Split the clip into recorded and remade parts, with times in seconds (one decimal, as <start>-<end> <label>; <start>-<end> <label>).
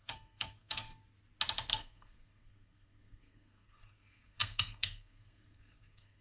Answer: 0.0-0.9 remade; 0.9-1.7 recorded; 1.7-6.2 remade